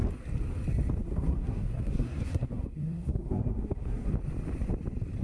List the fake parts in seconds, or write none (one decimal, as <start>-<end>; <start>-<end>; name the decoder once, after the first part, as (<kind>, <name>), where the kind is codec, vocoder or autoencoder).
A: 1.0-4.1 (codec, SNAC)